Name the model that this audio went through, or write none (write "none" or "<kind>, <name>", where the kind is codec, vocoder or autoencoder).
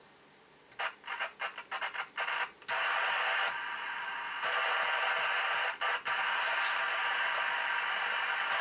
none